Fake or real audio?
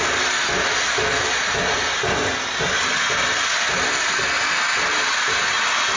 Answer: real